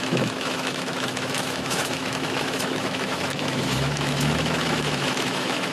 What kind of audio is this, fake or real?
fake